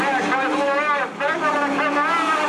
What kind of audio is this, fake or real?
real